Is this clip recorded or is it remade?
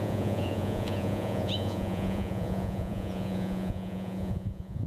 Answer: remade